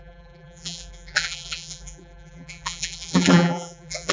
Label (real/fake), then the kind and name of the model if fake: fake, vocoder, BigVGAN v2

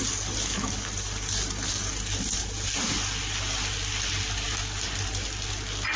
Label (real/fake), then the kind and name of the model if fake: real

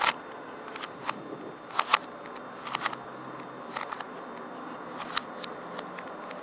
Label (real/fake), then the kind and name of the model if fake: real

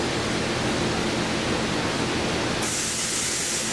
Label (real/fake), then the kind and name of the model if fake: real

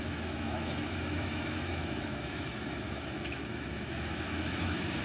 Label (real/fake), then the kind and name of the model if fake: fake, autoencoder, DAC-VAE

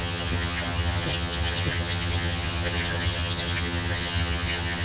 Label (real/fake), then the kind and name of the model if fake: fake, vocoder, HiFi-GAN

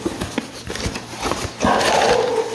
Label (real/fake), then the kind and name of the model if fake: real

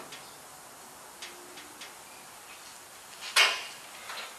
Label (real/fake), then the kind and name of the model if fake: real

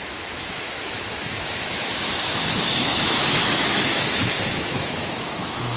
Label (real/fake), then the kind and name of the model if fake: fake, autoencoder, DAC-VAE